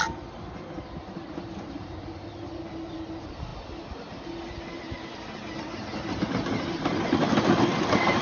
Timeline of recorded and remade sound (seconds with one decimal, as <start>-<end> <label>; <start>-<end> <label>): 0.0-3.5 remade; 3.5-7.3 recorded; 7.3-8.2 remade